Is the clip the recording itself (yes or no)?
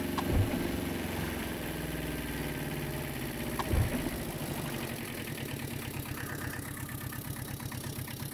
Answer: no